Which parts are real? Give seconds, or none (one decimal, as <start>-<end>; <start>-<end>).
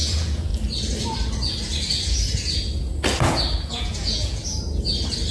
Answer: 0.5-3.7; 4.4-5.3